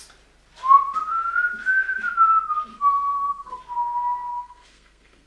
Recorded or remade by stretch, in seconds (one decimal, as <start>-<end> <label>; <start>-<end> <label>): 0.0-2.7 recorded; 2.7-3.6 remade; 3.6-4.3 recorded; 4.3-5.3 remade